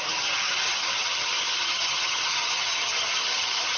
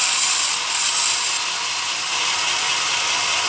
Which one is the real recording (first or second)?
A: second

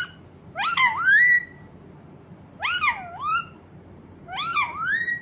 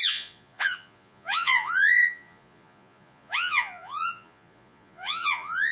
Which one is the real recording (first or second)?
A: first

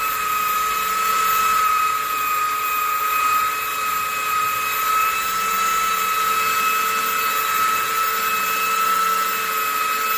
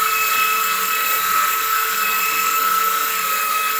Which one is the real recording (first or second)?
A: first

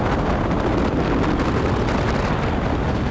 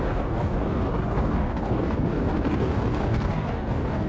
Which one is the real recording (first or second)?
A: first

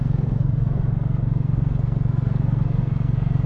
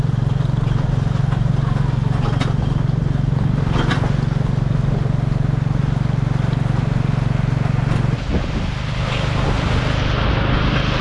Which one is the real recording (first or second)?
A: second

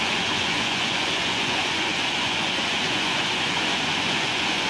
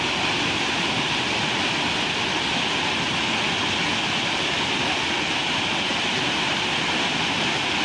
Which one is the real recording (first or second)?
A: second